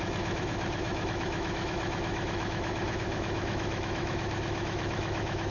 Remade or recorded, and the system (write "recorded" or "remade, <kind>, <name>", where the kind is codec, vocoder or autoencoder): remade, autoencoder, DAC-VAE